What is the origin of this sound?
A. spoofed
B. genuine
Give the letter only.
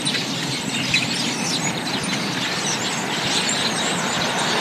B